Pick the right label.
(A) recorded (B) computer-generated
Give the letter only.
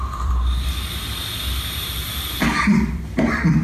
B